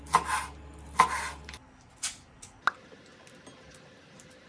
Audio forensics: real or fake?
real